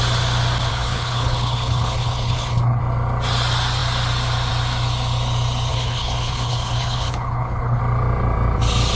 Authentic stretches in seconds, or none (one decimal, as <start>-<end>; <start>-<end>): 0.0-0.7; 2.8-5.7; 7.8-9.0